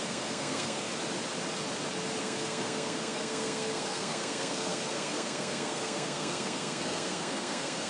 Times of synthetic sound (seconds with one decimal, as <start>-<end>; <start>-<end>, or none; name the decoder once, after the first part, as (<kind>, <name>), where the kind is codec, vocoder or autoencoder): 0.0-0.9 (codec, SNAC); 2.2-7.9